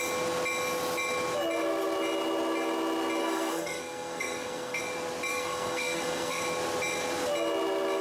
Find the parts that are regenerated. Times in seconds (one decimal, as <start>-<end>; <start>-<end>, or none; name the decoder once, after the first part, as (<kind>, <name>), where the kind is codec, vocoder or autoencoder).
3.2-4.8 (codec, SNAC); 5.3-6.4